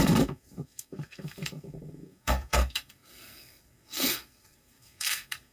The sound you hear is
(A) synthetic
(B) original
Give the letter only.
A